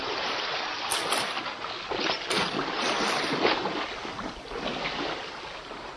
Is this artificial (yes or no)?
no